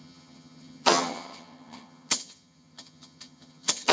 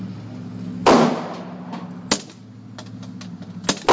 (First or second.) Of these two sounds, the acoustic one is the second